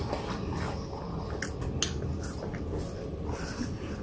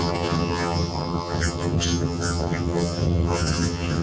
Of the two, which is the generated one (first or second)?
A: second